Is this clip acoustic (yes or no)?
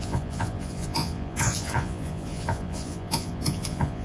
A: no